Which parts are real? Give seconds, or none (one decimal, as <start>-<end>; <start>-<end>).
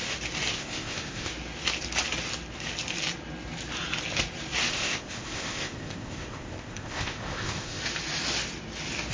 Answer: 0.0-0.5; 1.3-4.7; 7.8-9.1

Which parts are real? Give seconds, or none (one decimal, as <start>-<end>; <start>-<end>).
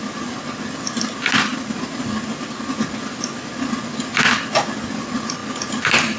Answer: 0.0-6.2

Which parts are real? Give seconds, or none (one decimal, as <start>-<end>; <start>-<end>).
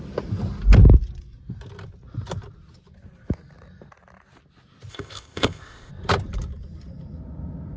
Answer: 0.0-4.9; 5.9-7.8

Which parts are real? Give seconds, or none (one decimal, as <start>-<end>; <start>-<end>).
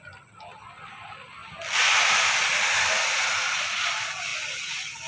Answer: 0.0-5.1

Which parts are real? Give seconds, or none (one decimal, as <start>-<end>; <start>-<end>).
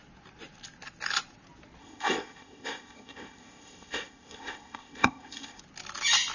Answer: 0.0-1.8; 5.6-6.3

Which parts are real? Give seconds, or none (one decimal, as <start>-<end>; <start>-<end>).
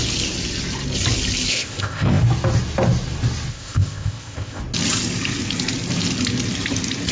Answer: 0.0-1.5; 2.2-3.5; 4.6-7.1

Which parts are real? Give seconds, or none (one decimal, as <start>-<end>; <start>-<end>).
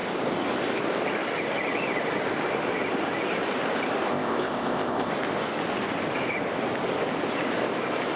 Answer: 0.0-4.1; 5.1-8.2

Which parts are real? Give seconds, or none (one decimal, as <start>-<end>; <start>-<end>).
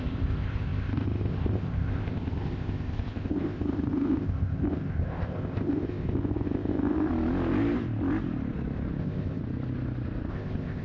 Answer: 7.1-9.0; 9.4-10.3